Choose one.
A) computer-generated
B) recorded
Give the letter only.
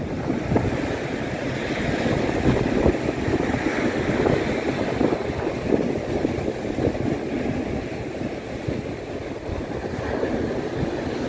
B